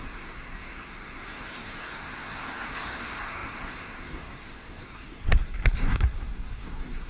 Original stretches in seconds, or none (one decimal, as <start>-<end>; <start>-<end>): none